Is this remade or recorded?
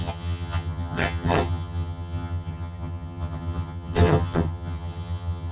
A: remade